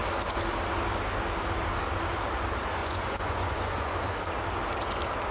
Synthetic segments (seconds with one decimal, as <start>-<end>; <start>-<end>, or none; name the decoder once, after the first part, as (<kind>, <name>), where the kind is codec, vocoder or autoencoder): 2.8-4.0 (vocoder, Vocos)